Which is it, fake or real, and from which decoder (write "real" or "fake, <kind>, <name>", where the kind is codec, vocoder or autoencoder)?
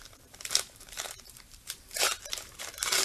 fake, vocoder, BigVGAN v2